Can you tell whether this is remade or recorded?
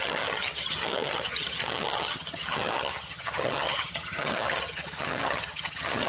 remade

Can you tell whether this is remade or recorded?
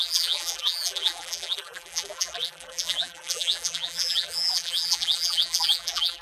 remade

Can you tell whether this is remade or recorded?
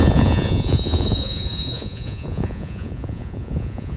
remade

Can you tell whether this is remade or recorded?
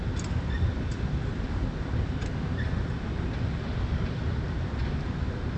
recorded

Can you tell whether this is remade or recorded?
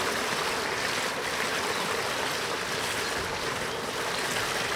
recorded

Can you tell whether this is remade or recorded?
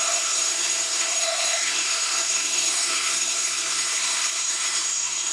remade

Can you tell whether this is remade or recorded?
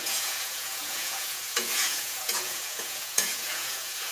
remade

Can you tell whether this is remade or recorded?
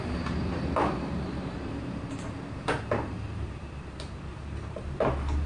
remade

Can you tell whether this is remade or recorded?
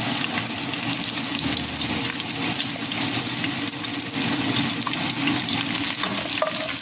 recorded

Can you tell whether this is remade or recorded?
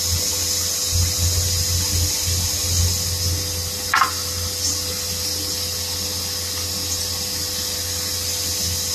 recorded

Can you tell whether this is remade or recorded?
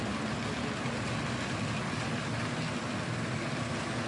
recorded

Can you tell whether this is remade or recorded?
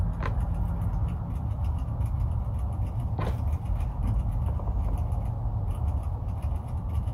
recorded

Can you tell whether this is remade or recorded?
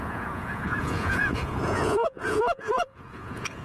remade